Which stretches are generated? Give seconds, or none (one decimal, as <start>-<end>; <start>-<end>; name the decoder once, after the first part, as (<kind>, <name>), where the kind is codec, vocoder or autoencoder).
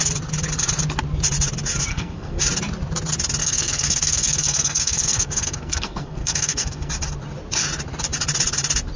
1.9-2.4 (codec, SNAC); 3.4-6.9